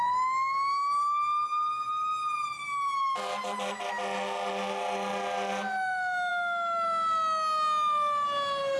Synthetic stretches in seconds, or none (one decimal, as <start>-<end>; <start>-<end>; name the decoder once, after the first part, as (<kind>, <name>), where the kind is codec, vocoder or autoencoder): none